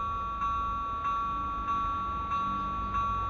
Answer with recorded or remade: recorded